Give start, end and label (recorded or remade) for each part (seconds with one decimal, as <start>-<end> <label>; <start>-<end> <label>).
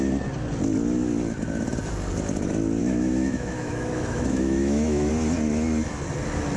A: 0.0-2.8 recorded; 2.8-5.1 remade; 5.1-6.6 recorded